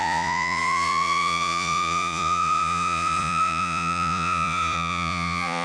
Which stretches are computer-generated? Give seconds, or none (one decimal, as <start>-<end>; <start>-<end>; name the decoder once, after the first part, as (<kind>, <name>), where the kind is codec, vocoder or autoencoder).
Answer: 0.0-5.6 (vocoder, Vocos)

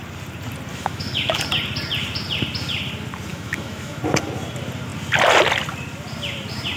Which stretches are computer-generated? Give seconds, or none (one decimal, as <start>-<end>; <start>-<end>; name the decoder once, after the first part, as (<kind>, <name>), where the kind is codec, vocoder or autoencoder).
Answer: 0.7-1.4 (autoencoder, DAC-VAE); 3.3-4.0

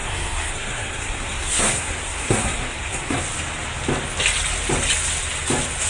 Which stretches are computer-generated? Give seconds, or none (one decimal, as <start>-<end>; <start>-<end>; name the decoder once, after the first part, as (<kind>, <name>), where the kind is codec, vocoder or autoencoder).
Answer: 0.0-3.2 (codec, SNAC)

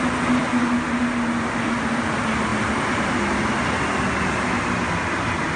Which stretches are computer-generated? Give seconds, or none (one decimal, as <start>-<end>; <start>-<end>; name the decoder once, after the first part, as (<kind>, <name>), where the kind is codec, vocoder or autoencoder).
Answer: none